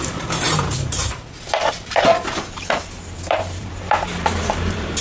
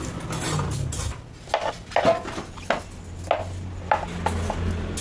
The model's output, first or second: first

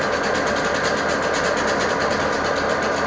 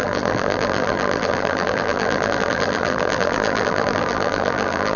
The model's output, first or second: second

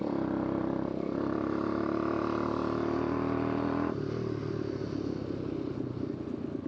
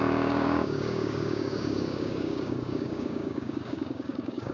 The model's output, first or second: second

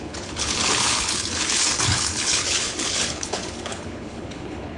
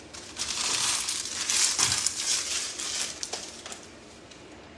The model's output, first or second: first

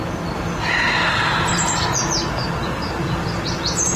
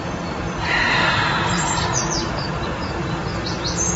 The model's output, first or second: second